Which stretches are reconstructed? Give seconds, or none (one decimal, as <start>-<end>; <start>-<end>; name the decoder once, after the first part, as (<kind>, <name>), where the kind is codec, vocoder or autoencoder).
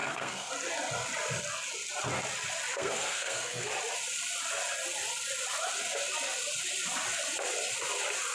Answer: 0.0-0.5 (codec, SNAC); 2.7-3.7